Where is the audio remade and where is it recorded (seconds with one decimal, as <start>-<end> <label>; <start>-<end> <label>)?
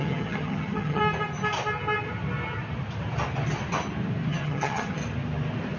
0.0-1.0 remade; 1.0-4.3 recorded; 4.3-5.0 remade; 5.0-5.8 recorded